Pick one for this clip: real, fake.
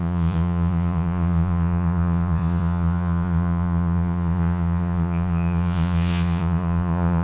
fake